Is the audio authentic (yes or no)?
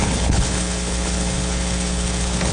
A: no